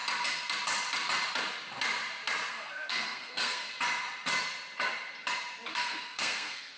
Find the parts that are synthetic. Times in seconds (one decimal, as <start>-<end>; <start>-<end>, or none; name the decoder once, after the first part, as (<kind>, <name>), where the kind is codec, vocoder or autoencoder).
2.5-3.7 (codec, SNAC); 5.7-6.8